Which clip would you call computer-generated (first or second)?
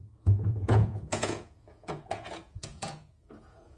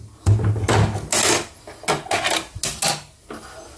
first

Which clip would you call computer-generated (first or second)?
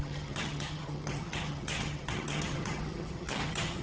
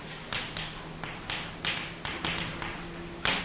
first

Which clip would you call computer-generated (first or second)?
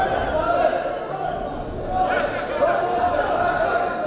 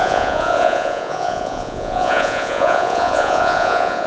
second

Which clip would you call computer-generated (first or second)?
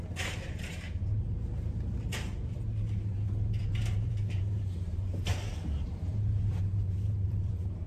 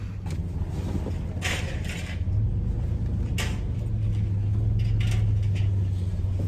first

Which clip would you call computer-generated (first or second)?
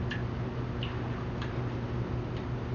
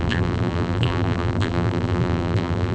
second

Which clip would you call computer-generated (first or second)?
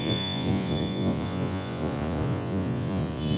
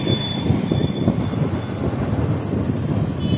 first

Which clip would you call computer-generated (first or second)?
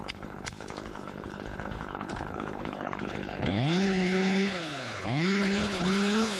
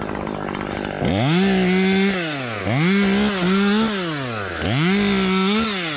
first